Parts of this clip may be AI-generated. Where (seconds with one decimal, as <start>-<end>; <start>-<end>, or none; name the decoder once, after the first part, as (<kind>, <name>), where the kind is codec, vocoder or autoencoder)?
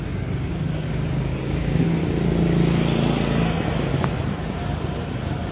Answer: 0.0-2.0 (codec, DAC)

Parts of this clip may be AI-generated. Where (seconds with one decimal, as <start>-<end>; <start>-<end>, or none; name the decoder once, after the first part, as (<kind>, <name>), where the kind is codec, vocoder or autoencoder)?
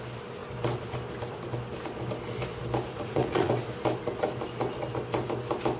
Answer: 2.9-3.5 (vocoder, Vocos)